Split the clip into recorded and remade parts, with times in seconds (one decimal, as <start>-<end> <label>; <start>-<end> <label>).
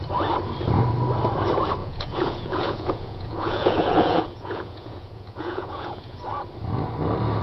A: 0.0-1.8 recorded; 1.8-6.2 remade; 6.2-7.4 recorded